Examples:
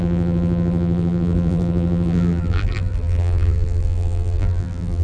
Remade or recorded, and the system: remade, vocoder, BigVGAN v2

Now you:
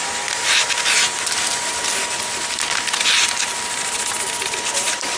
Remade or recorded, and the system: recorded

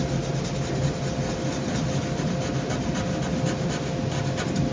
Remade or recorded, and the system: recorded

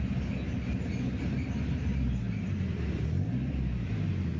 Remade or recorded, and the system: recorded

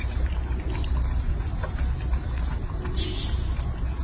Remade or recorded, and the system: recorded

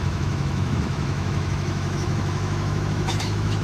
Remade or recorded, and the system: remade, autoencoder, DAC-VAE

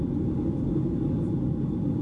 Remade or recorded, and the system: recorded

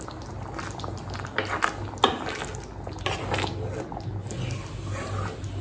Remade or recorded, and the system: recorded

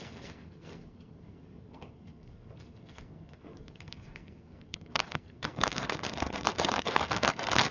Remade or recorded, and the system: remade, codec, SNAC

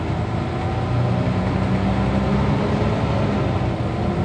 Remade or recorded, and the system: recorded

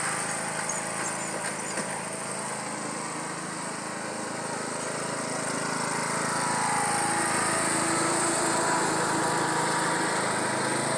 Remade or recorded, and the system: recorded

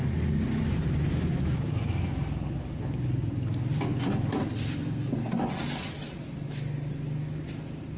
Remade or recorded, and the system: recorded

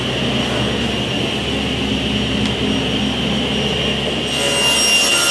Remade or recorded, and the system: recorded